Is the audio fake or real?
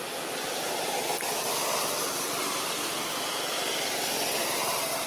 real